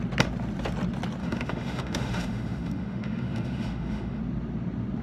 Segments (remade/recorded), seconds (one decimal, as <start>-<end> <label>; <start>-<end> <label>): 0.0-1.2 recorded; 1.2-4.2 remade; 4.2-5.0 recorded